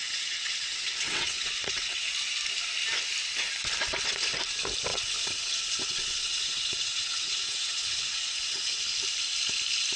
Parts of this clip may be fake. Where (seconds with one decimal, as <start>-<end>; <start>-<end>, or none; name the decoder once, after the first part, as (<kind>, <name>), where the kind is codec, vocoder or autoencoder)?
0.0-2.1 (vocoder, WaveNeXt); 4.9-8.8